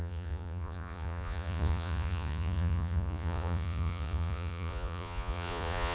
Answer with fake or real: fake